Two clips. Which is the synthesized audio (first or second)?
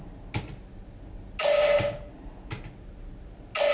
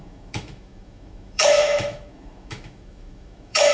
second